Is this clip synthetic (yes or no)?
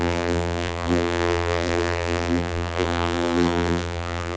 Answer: yes